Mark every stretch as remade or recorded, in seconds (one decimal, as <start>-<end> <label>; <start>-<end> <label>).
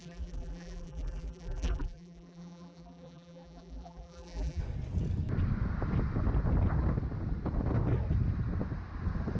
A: 0.0-4.6 remade; 4.6-9.4 recorded